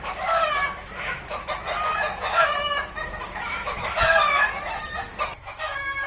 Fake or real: fake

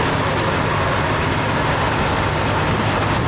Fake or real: real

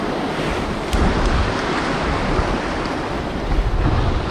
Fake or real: real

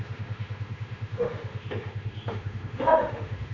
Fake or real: fake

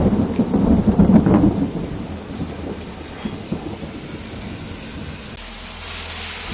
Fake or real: real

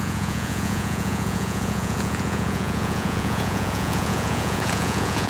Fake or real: fake